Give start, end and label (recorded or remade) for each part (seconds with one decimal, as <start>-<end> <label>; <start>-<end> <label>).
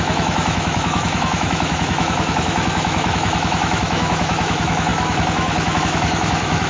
0.0-6.7 remade